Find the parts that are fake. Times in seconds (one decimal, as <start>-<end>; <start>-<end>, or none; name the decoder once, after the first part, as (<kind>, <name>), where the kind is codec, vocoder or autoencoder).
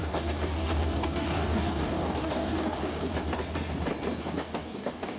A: 0.0-3.1 (codec, DAC); 4.2-5.2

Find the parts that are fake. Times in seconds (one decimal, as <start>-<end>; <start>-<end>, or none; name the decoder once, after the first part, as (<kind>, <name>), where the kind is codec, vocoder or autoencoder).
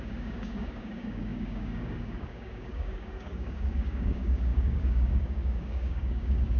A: 0.0-6.6 (codec, DAC)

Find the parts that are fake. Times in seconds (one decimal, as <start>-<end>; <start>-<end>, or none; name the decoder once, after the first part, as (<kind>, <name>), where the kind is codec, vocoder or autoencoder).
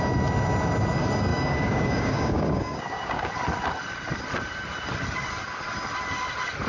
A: 1.3-3.3 (codec, DAC)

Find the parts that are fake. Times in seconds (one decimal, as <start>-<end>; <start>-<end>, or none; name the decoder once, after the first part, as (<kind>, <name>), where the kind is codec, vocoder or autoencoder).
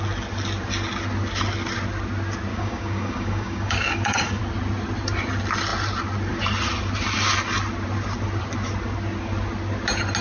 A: 2.5-4.4 (codec, DAC)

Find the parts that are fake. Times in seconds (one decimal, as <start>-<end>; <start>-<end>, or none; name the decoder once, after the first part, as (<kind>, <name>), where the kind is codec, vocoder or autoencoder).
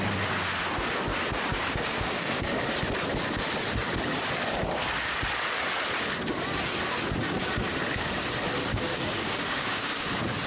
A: 1.5-2.6 (codec, DAC); 8.7-10.1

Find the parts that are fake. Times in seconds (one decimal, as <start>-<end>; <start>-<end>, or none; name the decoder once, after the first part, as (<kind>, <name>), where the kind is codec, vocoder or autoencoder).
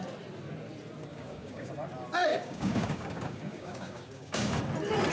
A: 1.1-1.7 (codec, DAC); 2.3-4.6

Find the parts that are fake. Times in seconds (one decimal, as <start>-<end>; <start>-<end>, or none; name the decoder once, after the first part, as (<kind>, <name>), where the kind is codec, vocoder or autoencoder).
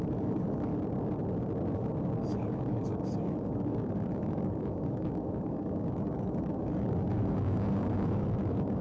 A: 0.0-0.7 (codec, DAC); 2.4-8.8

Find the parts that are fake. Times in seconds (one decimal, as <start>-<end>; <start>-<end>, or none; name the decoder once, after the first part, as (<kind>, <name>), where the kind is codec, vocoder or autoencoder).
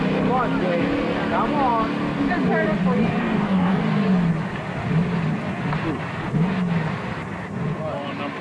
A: 3.2-3.8 (codec, DAC)